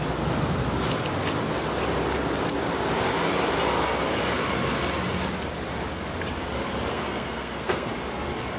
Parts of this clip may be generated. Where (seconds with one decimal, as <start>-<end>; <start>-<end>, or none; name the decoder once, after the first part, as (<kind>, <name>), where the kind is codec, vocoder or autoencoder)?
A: 6.9-7.9 (codec, SNAC)

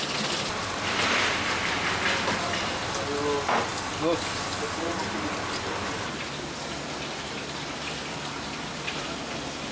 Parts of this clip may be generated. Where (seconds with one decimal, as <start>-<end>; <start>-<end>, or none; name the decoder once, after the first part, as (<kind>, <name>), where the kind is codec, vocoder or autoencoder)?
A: none

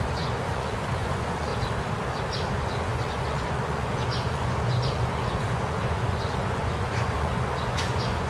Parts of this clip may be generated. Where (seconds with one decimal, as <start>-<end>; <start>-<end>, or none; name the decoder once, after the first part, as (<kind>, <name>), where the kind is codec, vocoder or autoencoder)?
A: 0.0-1.5 (vocoder, Vocos); 2.5-8.3

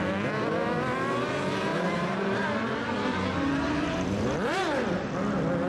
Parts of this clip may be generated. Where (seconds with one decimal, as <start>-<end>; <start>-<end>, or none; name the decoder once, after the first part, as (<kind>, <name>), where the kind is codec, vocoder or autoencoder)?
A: 1.7-5.1 (vocoder, BigVGAN v2)

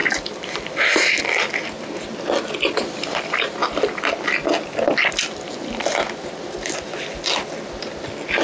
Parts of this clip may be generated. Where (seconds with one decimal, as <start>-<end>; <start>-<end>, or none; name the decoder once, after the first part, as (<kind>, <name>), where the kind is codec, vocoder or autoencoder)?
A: none